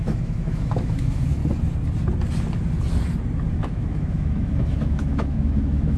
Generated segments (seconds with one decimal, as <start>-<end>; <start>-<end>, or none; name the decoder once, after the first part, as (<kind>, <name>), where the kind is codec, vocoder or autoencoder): 0.0-1.4 (autoencoder, DAC-VAE); 3.5-6.0